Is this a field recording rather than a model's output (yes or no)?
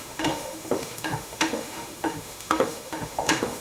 no